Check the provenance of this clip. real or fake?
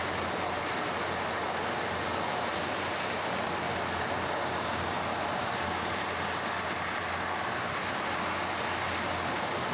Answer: real